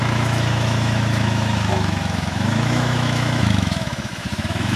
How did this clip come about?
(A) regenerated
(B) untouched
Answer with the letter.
A